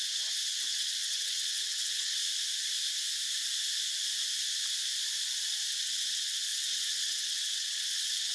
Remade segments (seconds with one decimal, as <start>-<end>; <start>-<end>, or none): 0.0-2.2; 5.7-8.3